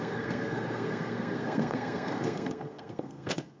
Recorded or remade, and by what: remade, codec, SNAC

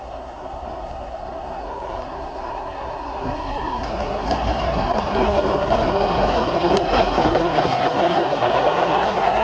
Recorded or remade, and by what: remade, codec, SNAC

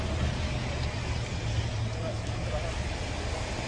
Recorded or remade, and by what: recorded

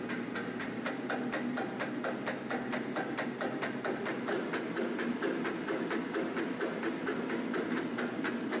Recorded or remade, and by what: recorded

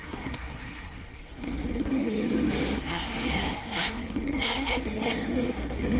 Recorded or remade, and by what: remade, codec, SNAC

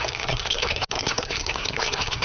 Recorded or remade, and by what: remade, codec, SNAC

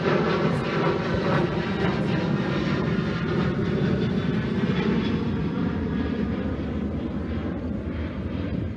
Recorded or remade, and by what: recorded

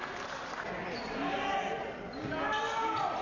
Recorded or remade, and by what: recorded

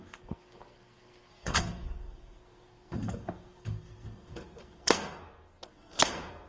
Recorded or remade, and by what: remade, codec, SNAC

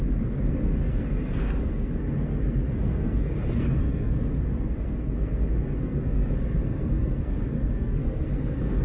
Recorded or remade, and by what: remade, codec, SNAC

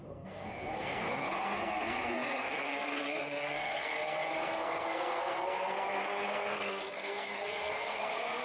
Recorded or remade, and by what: remade, codec, SNAC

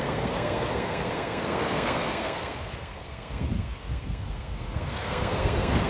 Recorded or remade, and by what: remade, codec, SNAC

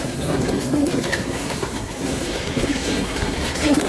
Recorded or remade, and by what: remade, codec, SNAC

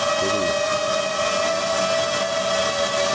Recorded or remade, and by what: recorded